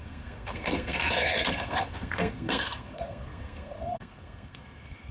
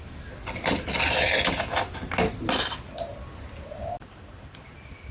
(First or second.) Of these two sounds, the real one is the second